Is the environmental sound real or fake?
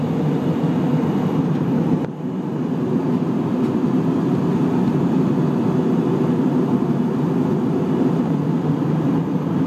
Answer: real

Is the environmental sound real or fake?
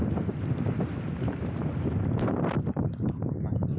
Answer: real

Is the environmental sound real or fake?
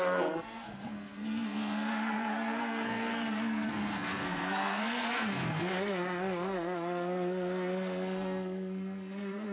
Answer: fake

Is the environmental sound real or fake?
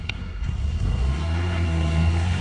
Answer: fake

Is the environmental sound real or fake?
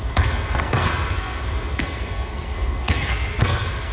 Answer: fake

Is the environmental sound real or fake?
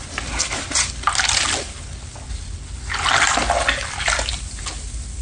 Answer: real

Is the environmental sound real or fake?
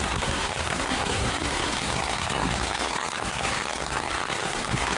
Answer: fake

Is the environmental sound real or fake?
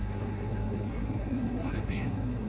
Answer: fake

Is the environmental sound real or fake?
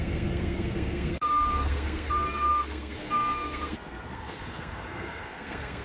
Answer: fake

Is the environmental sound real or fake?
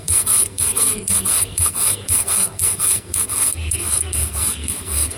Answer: fake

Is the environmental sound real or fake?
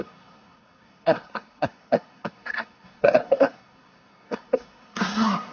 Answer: fake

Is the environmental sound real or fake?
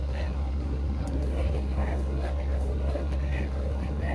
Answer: fake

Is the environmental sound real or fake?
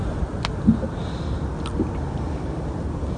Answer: real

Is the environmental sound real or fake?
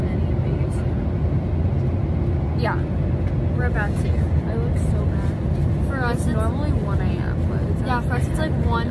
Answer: real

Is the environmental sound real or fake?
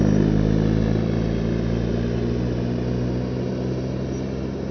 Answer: real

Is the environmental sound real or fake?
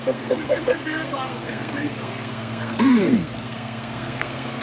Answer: fake